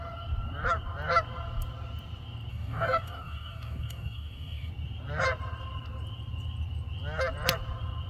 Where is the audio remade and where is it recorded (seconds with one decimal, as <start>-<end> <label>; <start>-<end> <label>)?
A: 0.0-2.5 recorded; 2.5-4.7 remade; 4.7-8.1 recorded